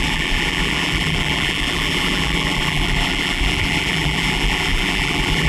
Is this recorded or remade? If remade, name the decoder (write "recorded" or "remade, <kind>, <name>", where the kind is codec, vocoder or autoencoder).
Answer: remade, vocoder, BigVGAN v2